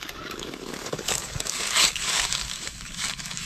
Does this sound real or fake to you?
fake